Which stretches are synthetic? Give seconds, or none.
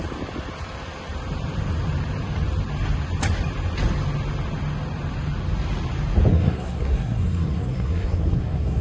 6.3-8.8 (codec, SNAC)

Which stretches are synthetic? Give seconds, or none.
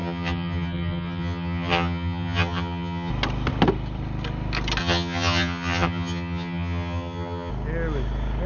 0.0-3.1 (vocoder, HiFi-GAN); 4.8-7.5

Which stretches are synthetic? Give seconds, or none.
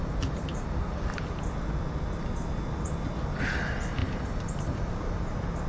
none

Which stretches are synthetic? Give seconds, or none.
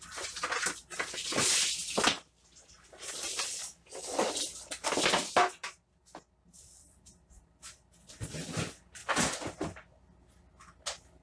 3.6-4.3 (codec, DAC)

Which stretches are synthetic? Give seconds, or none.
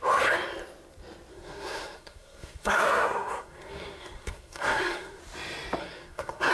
1.3-5.2 (codec, SNAC); 5.8-6.5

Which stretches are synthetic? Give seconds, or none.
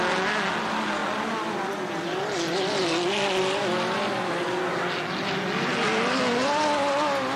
1.0-2.3 (vocoder, BigVGAN v2)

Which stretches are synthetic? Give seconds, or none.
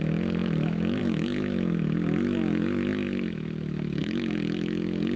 0.0-5.2 (autoencoder, DAC-VAE)